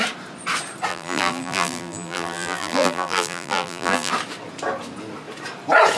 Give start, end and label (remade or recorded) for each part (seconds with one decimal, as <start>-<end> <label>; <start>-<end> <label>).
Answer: 0.0-0.9 recorded; 0.9-4.1 remade; 4.1-6.0 recorded